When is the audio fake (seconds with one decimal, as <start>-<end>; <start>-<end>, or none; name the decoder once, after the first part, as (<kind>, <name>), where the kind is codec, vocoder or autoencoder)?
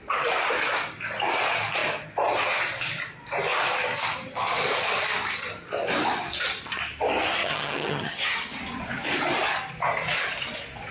7.4-8.6 (vocoder, HiFi-GAN)